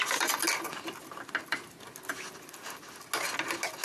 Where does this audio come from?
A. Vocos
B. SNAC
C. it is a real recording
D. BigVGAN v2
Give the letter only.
C